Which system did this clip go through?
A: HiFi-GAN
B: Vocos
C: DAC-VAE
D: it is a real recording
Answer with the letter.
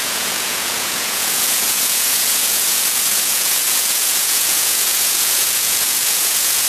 B